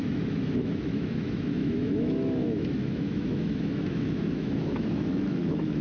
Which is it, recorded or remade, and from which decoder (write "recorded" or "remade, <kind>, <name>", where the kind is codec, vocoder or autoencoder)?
remade, autoencoder, DAC-VAE